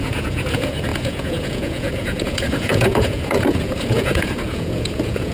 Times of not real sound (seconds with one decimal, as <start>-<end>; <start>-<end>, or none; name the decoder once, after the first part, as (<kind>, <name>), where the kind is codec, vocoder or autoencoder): 0.0-5.3 (vocoder, Vocos)